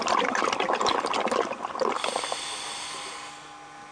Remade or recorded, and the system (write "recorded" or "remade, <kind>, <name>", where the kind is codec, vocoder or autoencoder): recorded